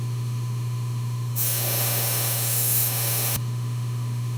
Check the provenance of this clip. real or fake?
fake